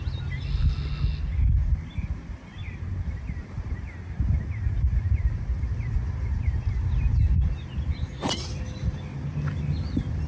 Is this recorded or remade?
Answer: recorded